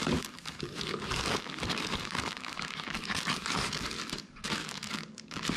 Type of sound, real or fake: fake